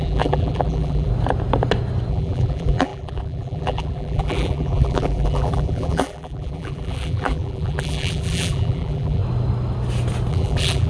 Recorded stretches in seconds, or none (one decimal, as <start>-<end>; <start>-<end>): 1.1-2.1; 9.2-10.3